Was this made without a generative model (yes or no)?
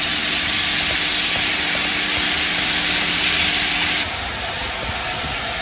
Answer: yes